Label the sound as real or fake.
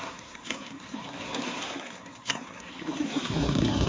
fake